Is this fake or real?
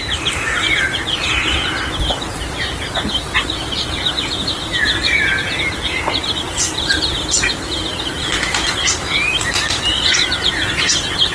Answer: real